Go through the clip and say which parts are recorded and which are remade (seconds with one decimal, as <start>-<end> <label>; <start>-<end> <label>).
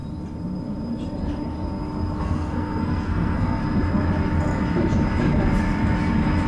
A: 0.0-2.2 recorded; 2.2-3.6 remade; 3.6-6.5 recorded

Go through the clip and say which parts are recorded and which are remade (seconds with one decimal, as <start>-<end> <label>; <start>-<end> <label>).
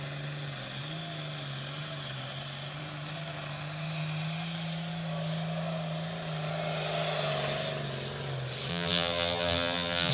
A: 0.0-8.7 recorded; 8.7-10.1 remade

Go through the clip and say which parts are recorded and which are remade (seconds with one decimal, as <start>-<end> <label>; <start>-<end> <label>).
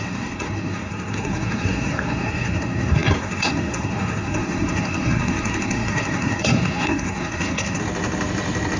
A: 0.0-7.8 remade; 7.8-8.8 recorded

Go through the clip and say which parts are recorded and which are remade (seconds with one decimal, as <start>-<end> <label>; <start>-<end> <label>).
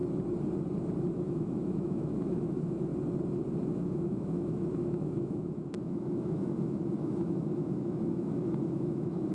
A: 0.0-1.1 recorded; 1.1-2.9 remade; 2.9-3.6 recorded; 3.6-9.3 remade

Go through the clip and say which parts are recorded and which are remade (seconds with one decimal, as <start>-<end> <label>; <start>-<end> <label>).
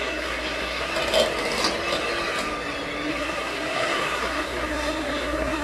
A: 0.0-0.9 remade; 0.9-3.1 recorded; 3.1-5.6 remade